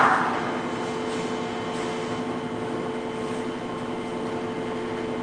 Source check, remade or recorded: recorded